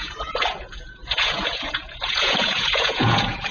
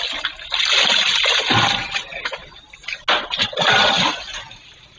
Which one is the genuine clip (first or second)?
second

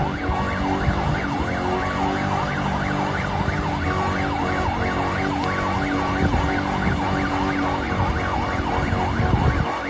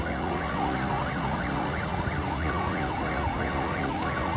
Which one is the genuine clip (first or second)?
first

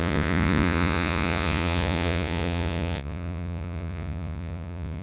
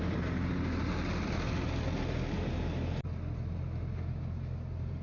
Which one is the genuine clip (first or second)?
second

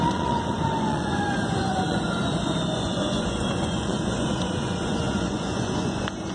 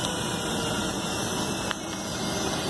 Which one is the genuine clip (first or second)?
second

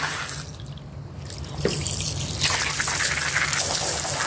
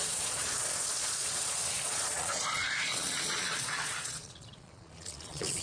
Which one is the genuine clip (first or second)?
first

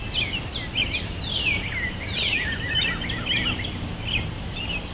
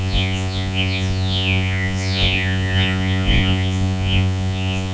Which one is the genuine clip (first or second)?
first